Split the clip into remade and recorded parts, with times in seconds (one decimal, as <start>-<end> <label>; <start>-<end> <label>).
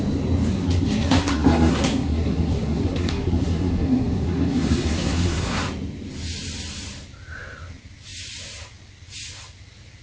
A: 0.0-0.5 recorded; 0.5-5.6 remade; 5.6-10.0 recorded